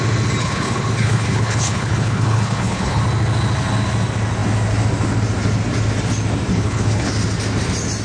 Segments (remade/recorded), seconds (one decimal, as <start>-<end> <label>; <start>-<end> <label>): 0.0-0.4 recorded; 0.4-3.0 remade; 3.0-6.5 recorded; 6.5-7.1 remade; 7.1-8.0 recorded